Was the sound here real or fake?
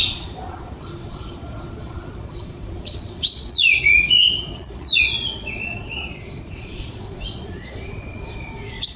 fake